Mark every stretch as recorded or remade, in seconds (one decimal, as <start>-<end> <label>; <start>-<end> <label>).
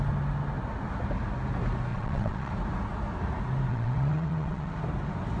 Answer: 0.0-1.9 recorded; 1.9-2.5 remade; 2.5-3.7 recorded; 3.7-4.7 remade; 4.7-5.4 recorded